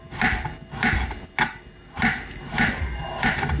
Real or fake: real